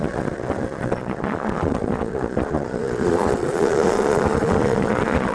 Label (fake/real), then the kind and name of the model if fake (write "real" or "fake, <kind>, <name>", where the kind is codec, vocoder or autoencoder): fake, vocoder, Vocos